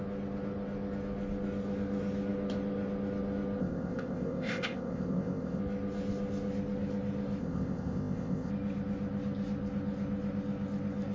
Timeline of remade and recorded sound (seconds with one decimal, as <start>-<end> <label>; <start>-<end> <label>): 0.0-3.6 recorded; 3.6-5.6 remade; 5.6-7.4 recorded; 7.4-8.5 remade; 8.5-11.1 recorded